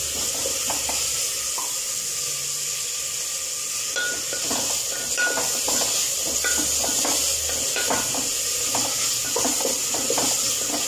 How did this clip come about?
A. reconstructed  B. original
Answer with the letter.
B